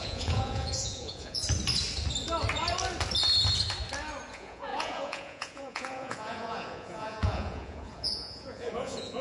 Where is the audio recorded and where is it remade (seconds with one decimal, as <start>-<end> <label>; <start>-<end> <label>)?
0.0-1.4 remade; 1.4-4.3 recorded; 4.3-9.2 remade